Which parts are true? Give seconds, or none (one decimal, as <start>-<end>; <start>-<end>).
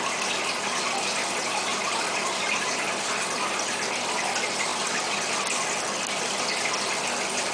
0.0-1.7; 3.2-7.5